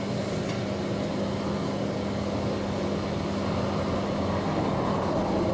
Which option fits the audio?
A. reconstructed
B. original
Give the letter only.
B